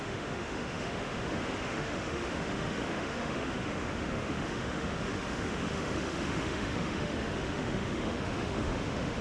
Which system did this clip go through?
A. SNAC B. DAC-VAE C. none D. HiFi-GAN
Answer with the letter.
B